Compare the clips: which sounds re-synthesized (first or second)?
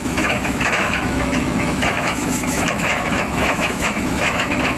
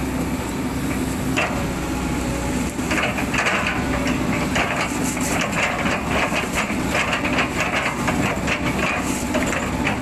first